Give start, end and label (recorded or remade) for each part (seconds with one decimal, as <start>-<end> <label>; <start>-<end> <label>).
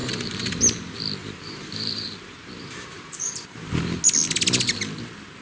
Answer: 0.0-0.6 remade; 0.6-1.2 recorded; 1.2-4.0 remade; 4.0-5.4 recorded